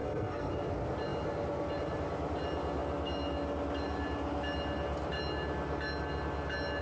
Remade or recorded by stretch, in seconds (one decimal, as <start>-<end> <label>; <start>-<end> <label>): 0.0-0.5 remade; 0.5-6.8 recorded